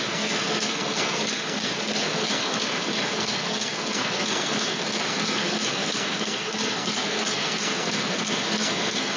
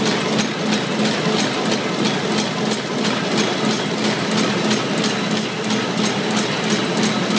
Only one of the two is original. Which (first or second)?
second